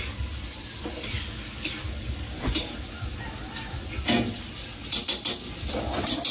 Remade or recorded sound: recorded